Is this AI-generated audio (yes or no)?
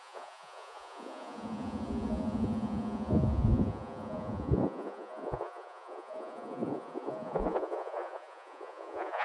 yes